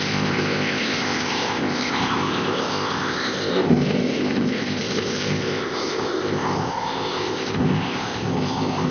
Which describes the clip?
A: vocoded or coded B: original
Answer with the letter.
A